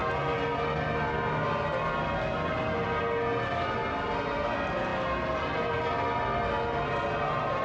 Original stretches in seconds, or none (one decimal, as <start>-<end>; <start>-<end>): 0.0-7.6